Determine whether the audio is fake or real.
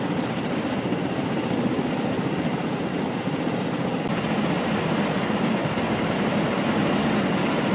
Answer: real